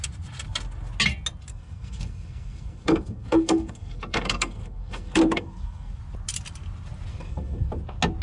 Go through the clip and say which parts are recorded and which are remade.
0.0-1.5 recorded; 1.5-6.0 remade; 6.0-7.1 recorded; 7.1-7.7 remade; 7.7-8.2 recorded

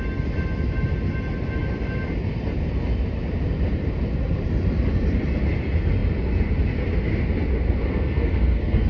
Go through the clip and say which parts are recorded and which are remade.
0.0-7.9 recorded; 7.9-8.9 remade

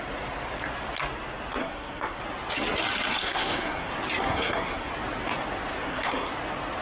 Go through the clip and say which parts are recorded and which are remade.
0.0-1.6 recorded; 1.6-2.2 remade; 2.2-3.2 recorded; 3.2-3.9 remade; 3.9-4.3 recorded; 4.3-4.9 remade; 4.9-5.8 recorded; 5.8-6.3 remade; 6.3-6.8 recorded

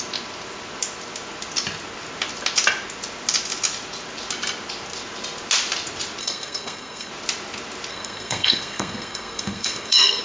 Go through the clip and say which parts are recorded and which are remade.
0.0-6.2 recorded; 6.2-7.1 remade; 7.1-7.9 recorded; 7.9-10.2 remade

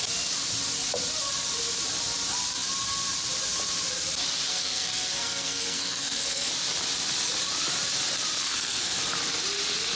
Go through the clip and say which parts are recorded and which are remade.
0.0-4.5 recorded; 4.5-6.5 remade; 6.5-8.4 recorded; 8.4-9.0 remade; 9.0-10.0 recorded

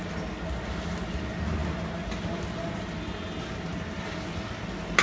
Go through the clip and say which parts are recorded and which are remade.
0.0-5.0 recorded

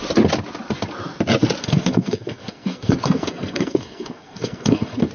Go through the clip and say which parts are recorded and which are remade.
0.0-1.6 recorded; 1.6-5.1 remade